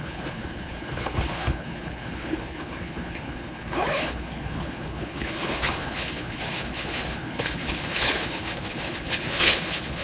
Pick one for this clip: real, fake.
fake